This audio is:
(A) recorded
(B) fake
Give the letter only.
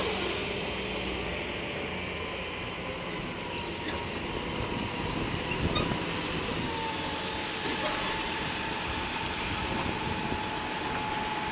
A